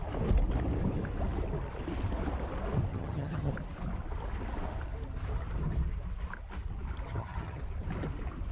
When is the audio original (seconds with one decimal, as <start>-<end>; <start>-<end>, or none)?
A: 0.0-2.9; 3.5-7.1; 7.6-8.5